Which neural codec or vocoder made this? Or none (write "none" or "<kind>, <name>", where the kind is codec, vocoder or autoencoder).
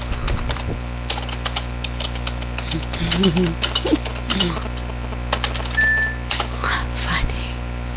none